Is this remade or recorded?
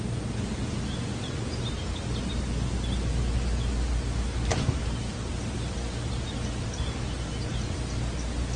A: recorded